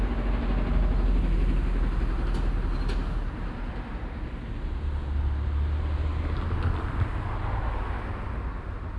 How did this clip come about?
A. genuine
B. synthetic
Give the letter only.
A